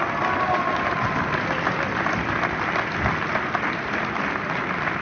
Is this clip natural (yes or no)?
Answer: yes